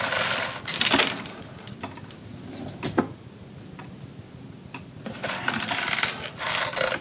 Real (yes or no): yes